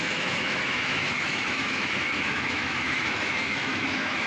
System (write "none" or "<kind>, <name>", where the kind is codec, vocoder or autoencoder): autoencoder, DAC-VAE